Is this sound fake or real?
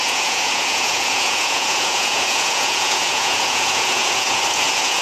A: fake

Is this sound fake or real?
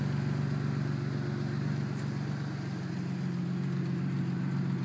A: real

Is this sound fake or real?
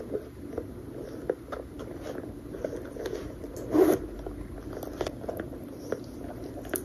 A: real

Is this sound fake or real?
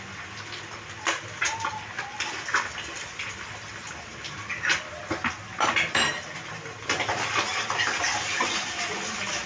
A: real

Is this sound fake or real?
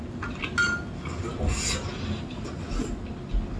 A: real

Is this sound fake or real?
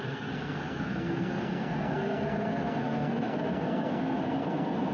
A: fake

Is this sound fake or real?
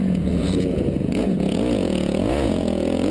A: fake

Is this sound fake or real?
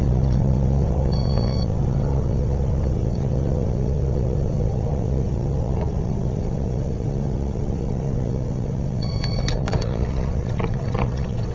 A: fake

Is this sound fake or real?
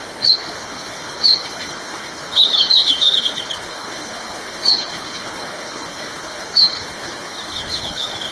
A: fake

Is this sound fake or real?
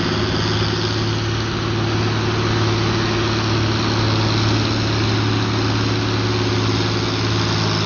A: real